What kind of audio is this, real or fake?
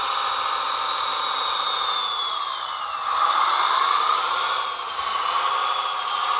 real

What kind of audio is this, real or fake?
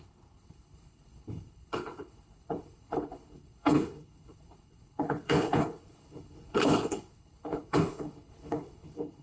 fake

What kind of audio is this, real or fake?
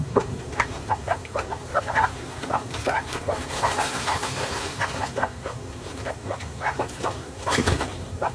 fake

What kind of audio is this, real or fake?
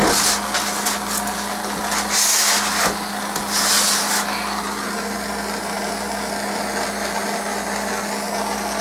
real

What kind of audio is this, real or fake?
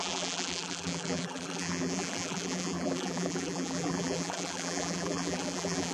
fake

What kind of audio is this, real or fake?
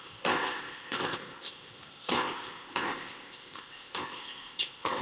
fake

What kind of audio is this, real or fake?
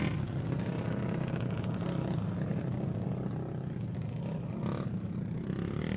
real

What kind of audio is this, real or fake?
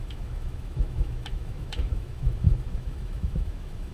fake